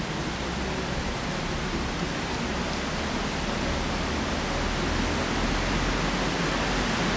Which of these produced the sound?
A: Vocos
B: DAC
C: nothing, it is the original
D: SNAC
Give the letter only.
C